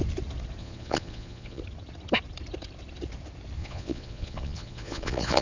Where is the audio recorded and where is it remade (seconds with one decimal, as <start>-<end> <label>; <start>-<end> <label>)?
0.0-0.6 recorded; 0.6-1.6 remade; 1.6-3.6 recorded; 3.6-5.4 remade